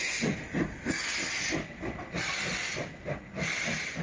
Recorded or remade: recorded